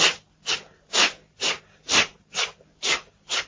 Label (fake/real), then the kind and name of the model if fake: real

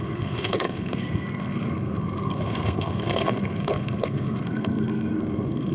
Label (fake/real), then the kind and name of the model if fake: fake, codec, SNAC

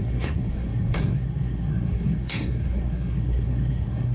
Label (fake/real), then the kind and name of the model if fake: fake, codec, SNAC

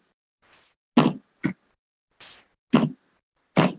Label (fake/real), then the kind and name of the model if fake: real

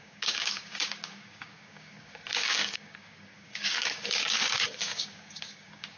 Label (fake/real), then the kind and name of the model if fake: fake, codec, DAC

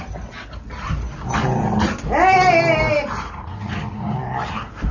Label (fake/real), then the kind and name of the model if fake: real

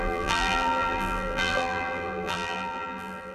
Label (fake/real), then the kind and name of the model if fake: fake, vocoder, BigVGAN v2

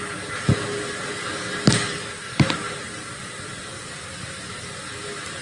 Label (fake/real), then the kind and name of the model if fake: real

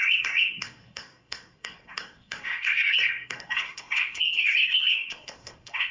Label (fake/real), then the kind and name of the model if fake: fake, codec, SNAC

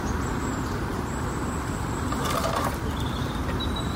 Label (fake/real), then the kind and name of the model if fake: real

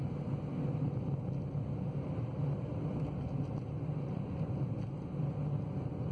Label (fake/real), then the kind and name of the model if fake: real